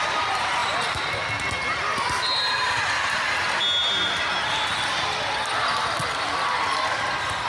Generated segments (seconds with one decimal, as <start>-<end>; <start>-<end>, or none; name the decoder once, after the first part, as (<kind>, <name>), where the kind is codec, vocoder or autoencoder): none